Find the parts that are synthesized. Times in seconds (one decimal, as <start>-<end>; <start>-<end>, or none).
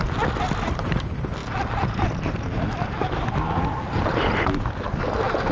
0.7-5.5